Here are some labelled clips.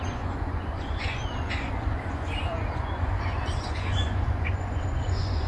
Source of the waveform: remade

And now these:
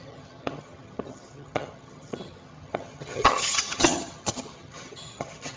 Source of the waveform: remade